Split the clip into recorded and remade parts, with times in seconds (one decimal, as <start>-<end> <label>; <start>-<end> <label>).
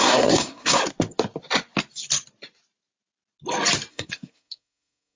0.0-0.8 remade; 0.8-3.9 recorded; 3.9-5.2 remade